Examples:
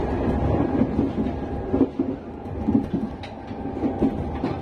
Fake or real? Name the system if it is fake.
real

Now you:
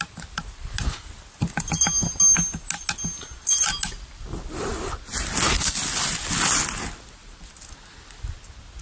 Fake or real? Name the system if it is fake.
real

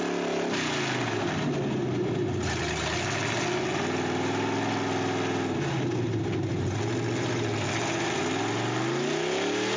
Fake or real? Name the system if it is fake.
real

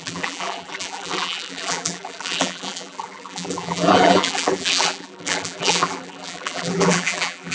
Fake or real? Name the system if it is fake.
fake, vocoder, BigVGAN v2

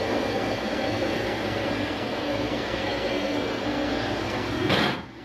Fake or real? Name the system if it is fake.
fake, codec, SNAC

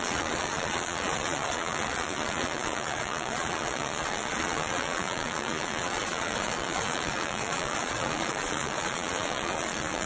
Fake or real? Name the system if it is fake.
fake, vocoder, Vocos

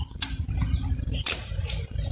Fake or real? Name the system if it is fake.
fake, vocoder, BigVGAN v2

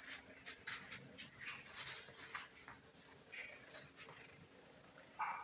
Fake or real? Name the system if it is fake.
real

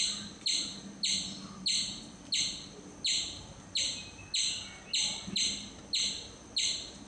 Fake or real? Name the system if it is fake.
real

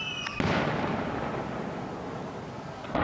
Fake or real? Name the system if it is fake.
real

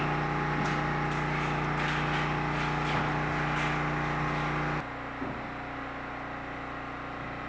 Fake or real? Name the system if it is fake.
real